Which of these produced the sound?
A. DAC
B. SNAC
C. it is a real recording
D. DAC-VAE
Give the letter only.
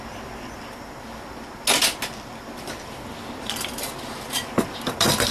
C